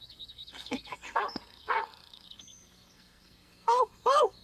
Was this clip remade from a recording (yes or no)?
yes